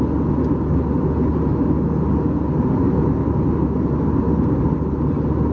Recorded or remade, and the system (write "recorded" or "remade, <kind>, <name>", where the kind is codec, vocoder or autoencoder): recorded